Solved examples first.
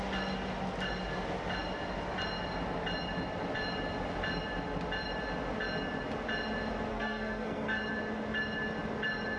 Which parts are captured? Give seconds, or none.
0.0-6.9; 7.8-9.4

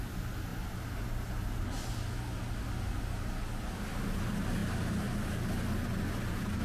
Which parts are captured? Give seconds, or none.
0.0-6.6

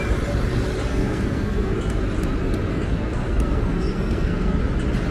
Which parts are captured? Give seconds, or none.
0.0-0.9; 2.0-2.7; 4.6-5.1

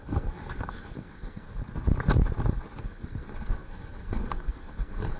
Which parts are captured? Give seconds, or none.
1.6-2.8

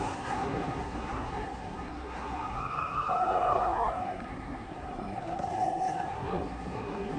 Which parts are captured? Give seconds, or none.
none

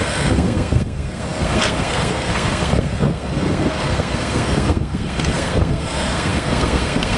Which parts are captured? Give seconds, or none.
none

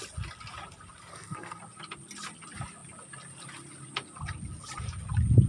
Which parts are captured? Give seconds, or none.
0.0-1.1; 1.6-5.5

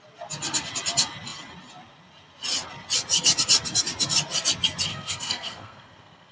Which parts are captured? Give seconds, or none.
0.0-4.9